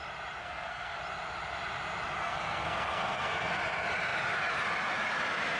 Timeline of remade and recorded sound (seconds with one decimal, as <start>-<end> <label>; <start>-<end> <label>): 0.0-0.4 recorded; 0.4-1.0 remade; 1.0-2.2 recorded; 2.2-3.6 remade; 3.6-5.6 recorded